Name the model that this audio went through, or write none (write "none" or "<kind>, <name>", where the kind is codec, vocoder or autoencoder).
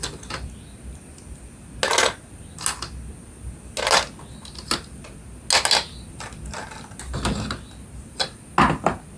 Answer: none